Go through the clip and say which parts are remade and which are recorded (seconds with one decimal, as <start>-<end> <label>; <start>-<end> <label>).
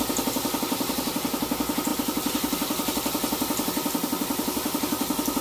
0.0-5.4 recorded